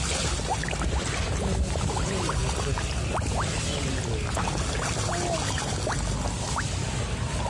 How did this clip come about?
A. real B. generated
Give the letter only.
A